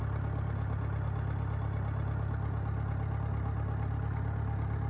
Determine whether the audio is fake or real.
real